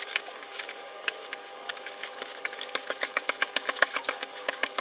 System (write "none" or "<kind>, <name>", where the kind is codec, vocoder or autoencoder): codec, DAC